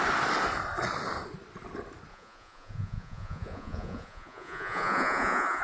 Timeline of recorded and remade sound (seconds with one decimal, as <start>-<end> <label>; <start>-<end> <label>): 0.0-2.1 recorded; 2.1-5.6 remade